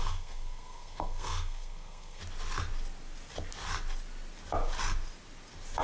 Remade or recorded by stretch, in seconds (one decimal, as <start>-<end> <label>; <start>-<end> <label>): 0.0-2.2 remade; 2.2-5.8 recorded